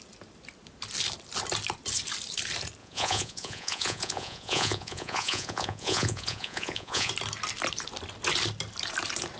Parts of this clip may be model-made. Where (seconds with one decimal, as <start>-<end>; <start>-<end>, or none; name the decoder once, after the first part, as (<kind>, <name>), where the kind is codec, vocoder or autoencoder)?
2.8-7.1 (vocoder, Vocos)